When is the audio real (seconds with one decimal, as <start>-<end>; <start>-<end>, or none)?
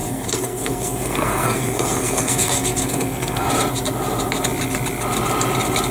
3.5-5.9